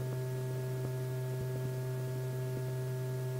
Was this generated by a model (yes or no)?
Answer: no